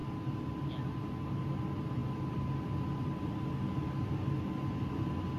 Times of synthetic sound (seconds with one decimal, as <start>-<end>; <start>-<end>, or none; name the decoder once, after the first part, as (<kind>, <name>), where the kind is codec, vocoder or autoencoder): none